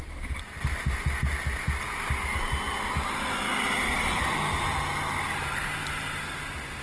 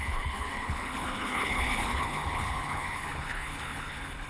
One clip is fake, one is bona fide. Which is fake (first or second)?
second